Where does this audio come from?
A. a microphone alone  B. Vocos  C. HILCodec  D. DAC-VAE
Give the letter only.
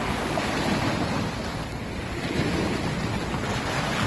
A